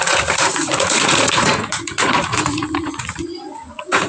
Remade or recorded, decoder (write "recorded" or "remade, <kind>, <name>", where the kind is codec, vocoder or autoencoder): remade, vocoder, Vocos